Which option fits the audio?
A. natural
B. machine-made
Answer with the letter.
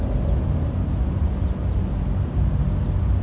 A